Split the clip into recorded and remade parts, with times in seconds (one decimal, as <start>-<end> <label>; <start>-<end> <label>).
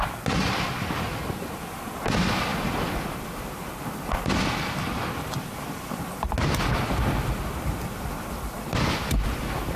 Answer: 0.0-9.8 recorded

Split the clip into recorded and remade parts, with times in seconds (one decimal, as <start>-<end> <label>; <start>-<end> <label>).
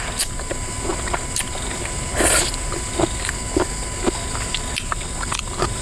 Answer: 0.0-5.8 recorded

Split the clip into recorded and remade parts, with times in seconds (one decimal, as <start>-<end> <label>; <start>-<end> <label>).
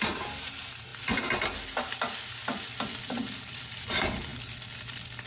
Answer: 0.0-5.3 recorded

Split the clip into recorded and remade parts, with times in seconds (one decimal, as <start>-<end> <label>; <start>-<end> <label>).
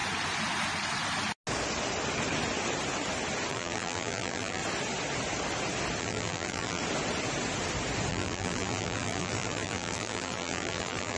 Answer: 0.0-3.5 recorded; 3.5-4.6 remade; 4.6-6.0 recorded; 6.0-6.8 remade; 6.8-8.1 recorded; 8.1-11.2 remade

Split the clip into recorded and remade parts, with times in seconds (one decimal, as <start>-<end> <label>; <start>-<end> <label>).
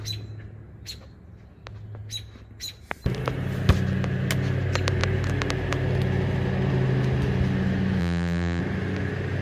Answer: 0.0-8.0 recorded; 8.0-8.6 remade; 8.6-9.4 recorded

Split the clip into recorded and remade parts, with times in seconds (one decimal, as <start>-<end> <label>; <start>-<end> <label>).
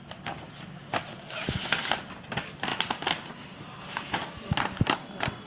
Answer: 0.0-5.5 recorded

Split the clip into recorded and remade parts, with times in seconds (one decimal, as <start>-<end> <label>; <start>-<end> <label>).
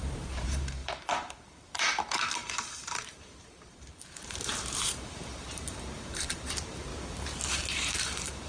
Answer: 0.0-6.9 remade; 6.9-7.5 recorded; 7.5-8.5 remade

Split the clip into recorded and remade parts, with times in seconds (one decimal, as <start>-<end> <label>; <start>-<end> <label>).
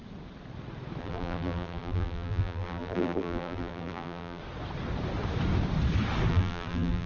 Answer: 0.0-1.0 recorded; 1.0-4.4 remade; 4.4-6.3 recorded; 6.3-7.1 remade